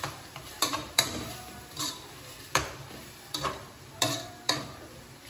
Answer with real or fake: fake